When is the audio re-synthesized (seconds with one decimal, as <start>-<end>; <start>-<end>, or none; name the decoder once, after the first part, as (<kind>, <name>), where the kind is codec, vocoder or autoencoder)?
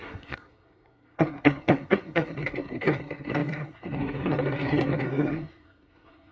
0.0-6.3 (codec, SNAC)